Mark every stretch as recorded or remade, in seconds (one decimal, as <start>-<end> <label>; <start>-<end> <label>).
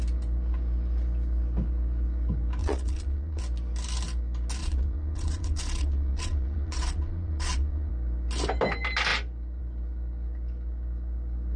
0.0-2.6 recorded; 2.6-3.4 remade; 3.4-4.6 recorded; 4.6-7.9 remade; 7.9-11.6 recorded